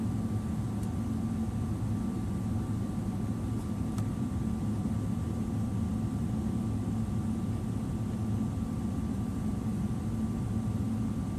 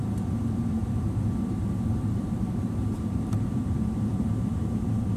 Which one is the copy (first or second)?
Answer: second